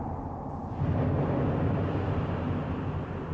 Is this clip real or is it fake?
real